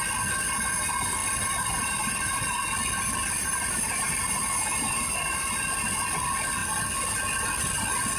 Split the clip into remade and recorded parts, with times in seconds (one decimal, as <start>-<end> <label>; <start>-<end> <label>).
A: 0.0-1.2 recorded; 1.2-2.4 remade; 2.4-3.4 recorded; 3.4-4.4 remade; 4.4-8.2 recorded